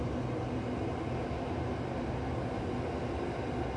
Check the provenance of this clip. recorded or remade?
recorded